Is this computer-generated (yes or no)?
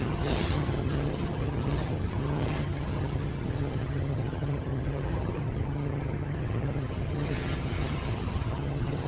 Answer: yes